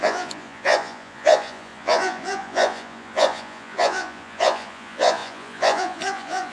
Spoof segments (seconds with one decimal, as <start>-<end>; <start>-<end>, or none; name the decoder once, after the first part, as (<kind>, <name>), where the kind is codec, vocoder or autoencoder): 0.0-6.5 (vocoder, Vocos)